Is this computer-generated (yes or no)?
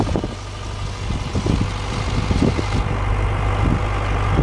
no